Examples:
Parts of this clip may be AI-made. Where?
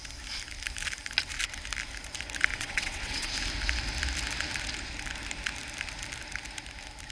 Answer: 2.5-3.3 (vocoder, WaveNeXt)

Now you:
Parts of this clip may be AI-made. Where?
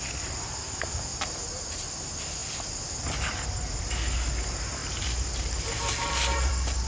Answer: 1.1-1.9 (vocoder, BigVGAN v2); 4.8-6.5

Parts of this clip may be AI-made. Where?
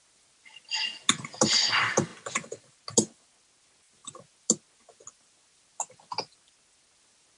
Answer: none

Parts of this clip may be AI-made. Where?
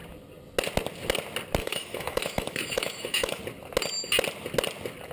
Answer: 1.6-3.4 (autoencoder, DAC-VAE)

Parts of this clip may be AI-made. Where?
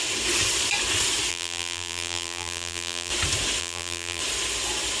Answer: 1.3-3.1 (vocoder, BigVGAN v2); 3.6-4.2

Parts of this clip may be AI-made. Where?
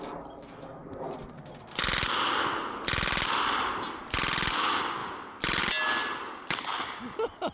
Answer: none